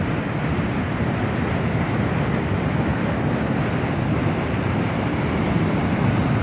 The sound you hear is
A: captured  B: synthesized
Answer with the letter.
A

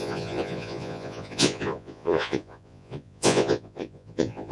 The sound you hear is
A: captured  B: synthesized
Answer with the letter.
B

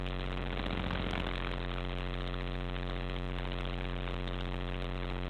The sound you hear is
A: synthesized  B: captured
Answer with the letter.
B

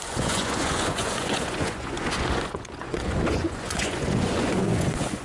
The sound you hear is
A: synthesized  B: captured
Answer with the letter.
A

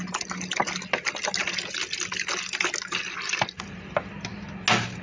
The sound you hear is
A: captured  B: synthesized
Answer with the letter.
A